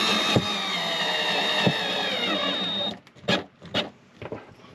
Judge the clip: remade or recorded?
recorded